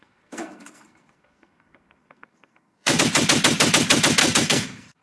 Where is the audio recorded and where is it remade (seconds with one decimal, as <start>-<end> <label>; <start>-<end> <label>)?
0.0-3.0 remade; 3.0-4.2 recorded; 4.2-5.0 remade